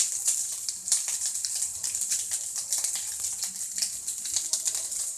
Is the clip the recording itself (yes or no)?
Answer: yes